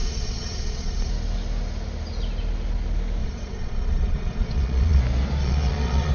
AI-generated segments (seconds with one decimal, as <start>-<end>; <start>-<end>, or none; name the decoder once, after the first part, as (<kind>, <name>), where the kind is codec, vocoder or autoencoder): 0.0-1.1 (vocoder, Vocos); 3.2-5.0; 5.4-6.1

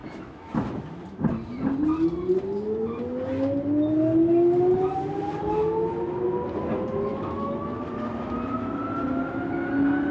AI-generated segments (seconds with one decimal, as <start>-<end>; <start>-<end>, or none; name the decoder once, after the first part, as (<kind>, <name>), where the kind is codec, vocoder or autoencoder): 0.0-0.7 (autoencoder, DAC-VAE); 7.1-7.8

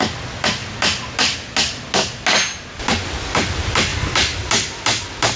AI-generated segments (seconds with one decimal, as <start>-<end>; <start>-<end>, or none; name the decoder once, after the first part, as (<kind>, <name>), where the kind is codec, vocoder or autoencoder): 3.9-4.5 (vocoder, BigVGAN v2)

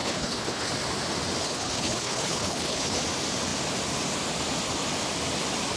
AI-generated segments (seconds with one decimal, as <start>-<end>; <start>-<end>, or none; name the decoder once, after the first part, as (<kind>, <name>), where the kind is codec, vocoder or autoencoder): 0.0-0.7 (codec, HILCodec); 1.4-3.0